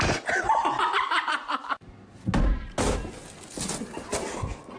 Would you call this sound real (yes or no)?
yes